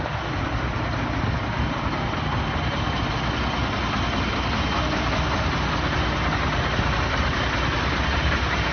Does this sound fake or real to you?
real